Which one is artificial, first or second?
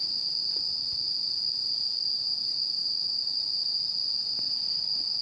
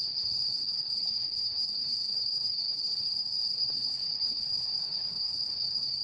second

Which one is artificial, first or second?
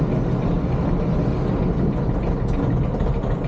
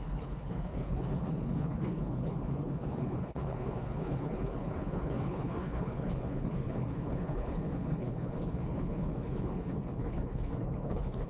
second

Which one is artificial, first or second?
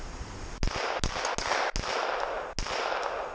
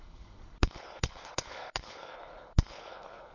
second